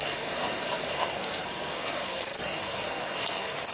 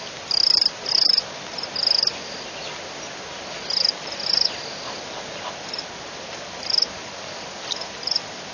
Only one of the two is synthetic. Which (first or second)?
first